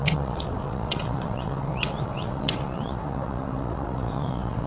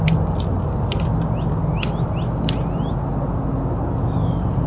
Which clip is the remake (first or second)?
first